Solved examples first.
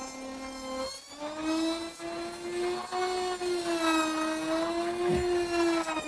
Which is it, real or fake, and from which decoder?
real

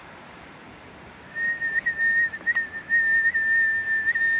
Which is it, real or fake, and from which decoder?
real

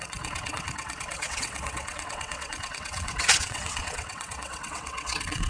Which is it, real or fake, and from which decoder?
fake, vocoder, WaveNeXt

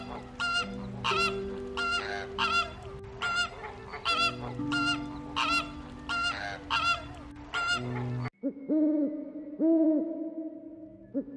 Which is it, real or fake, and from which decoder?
real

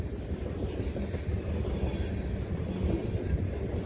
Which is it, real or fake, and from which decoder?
real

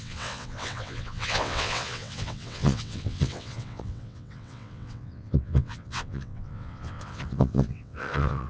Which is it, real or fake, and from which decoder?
fake, vocoder, WaveNeXt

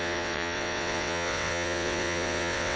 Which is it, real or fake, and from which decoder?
fake, vocoder, WaveNeXt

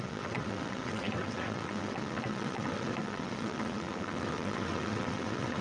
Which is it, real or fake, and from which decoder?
fake, vocoder, WaveNeXt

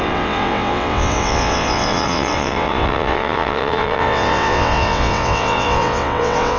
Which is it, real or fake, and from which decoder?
fake, vocoder, WaveNeXt